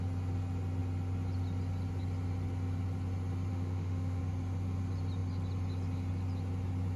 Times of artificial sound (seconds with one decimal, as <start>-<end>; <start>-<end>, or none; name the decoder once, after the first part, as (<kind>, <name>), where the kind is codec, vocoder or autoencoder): 3.5-4.2 (autoencoder, DAC-VAE)